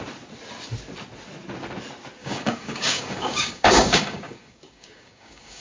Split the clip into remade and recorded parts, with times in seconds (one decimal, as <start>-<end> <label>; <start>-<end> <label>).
0.0-2.2 recorded; 2.2-5.6 remade